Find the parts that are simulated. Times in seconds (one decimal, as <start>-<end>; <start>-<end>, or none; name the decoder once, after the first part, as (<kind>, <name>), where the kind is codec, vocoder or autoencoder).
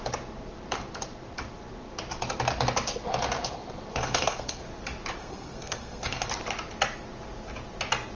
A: 3.9-4.6 (codec, SNAC); 5.2-6.3